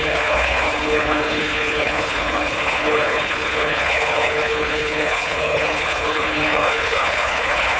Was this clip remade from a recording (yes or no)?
yes